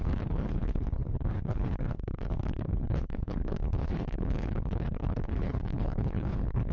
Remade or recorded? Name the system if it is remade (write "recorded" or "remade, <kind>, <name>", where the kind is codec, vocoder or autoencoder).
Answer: remade, codec, HILCodec